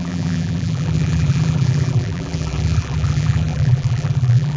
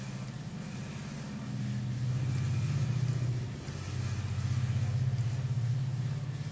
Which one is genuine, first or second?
second